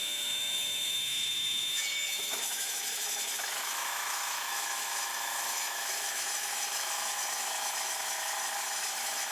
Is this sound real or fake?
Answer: fake